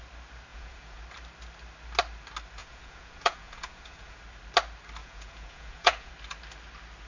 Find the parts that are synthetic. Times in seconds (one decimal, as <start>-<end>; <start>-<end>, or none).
0.5-1.0; 2.6-4.2; 5.0-6.1